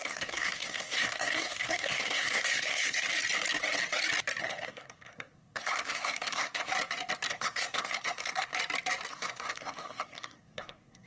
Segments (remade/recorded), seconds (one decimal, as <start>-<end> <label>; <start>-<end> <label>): 0.0-3.1 remade; 3.1-4.4 recorded; 4.4-6.7 remade; 6.7-7.3 recorded; 7.3-8.5 remade; 8.5-9.1 recorded; 9.1-11.1 remade